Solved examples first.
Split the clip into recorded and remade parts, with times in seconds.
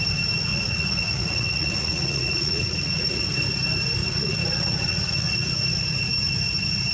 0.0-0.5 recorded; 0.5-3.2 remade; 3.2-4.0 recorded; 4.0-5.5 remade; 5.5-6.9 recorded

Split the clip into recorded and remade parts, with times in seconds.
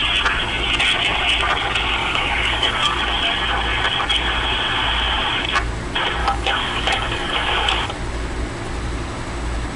0.0-2.0 recorded; 2.0-3.0 remade; 3.0-6.2 recorded; 6.2-7.9 remade; 7.9-9.8 recorded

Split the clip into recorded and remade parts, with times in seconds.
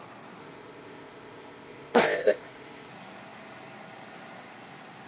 0.0-0.4 recorded; 0.4-2.9 remade; 2.9-5.1 recorded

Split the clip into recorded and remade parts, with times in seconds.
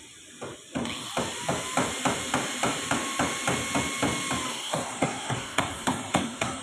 0.0-4.5 recorded; 4.5-6.6 remade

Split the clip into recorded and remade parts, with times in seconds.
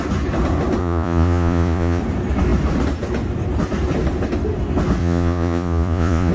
0.0-0.8 recorded; 0.8-2.0 remade; 2.0-5.0 recorded; 5.0-6.3 remade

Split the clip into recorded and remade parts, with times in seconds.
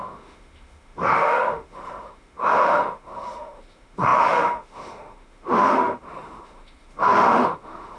0.0-8.0 remade